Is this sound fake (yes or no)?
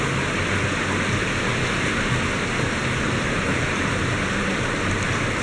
no